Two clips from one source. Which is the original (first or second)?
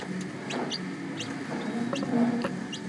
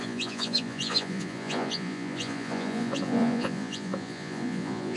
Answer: first